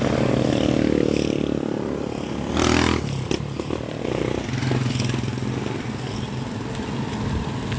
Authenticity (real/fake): real